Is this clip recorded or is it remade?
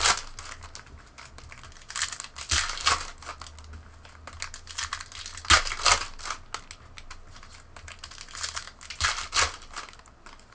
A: recorded